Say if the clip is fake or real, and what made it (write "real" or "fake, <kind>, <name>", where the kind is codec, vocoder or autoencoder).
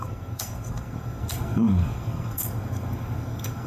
fake, codec, SNAC